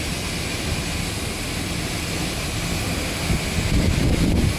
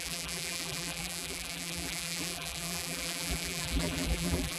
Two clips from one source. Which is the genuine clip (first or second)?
first